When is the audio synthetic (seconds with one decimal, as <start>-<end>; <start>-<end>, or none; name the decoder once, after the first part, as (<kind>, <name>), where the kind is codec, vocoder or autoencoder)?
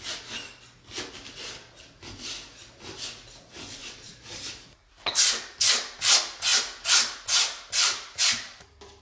3.8-5.2 (vocoder, BigVGAN v2)